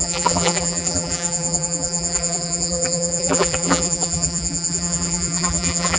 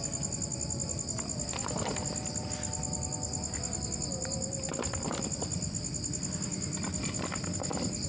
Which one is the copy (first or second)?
first